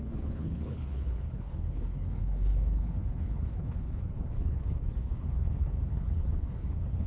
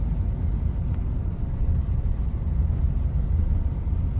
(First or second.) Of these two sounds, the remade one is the first